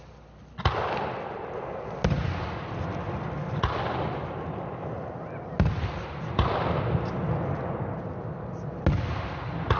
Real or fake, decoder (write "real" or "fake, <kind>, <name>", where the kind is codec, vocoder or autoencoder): real